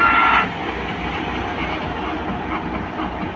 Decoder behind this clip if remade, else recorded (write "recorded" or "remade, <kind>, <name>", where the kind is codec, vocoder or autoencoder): recorded